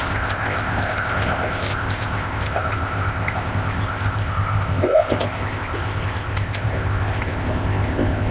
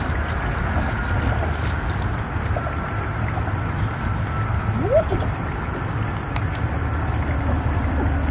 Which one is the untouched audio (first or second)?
second